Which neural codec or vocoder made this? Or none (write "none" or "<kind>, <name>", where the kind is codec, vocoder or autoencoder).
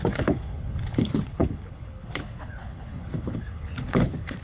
codec, HILCodec